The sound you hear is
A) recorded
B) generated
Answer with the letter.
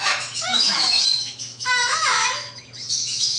B